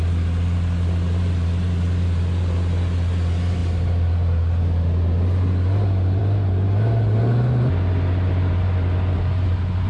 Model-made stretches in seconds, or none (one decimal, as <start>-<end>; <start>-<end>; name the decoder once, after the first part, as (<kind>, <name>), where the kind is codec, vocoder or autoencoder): none